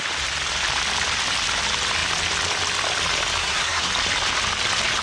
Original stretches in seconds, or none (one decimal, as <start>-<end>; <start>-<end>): 0.0-3.4; 3.9-5.0